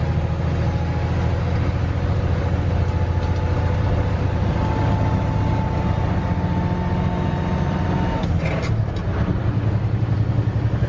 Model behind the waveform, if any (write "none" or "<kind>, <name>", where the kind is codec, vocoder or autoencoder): none